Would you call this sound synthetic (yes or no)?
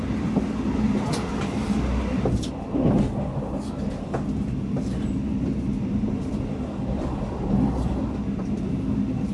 no